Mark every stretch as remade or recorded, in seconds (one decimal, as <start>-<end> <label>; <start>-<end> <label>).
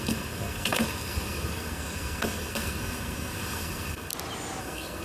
0.0-4.1 remade; 4.1-4.6 recorded; 4.6-5.0 remade